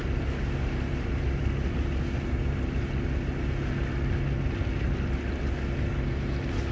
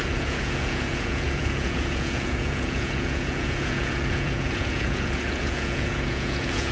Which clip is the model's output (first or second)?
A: second